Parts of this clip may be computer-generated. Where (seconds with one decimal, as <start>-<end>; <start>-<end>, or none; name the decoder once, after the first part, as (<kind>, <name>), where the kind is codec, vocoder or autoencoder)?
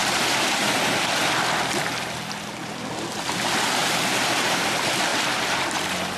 none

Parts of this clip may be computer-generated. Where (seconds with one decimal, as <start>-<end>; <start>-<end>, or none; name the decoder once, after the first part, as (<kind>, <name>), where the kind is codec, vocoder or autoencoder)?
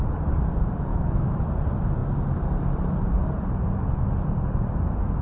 0.9-1.5 (autoencoder, DAC-VAE)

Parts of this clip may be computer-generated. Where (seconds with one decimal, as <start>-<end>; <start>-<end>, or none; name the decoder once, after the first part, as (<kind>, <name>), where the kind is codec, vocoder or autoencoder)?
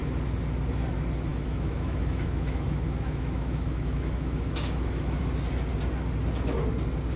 1.3-5.2 (autoencoder, DAC-VAE)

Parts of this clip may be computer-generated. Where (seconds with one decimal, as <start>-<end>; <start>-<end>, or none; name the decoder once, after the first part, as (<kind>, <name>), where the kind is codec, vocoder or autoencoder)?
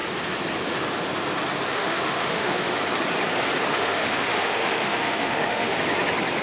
1.7-2.7 (autoencoder, DAC-VAE); 3.7-5.8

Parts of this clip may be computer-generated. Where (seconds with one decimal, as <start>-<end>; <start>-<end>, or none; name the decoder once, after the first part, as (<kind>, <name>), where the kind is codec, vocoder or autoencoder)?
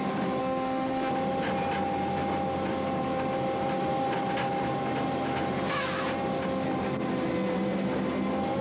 0.4-1.1 (autoencoder, DAC-VAE)